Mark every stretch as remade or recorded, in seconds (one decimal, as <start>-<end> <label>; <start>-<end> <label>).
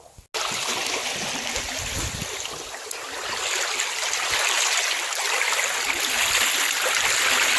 0.0-7.6 recorded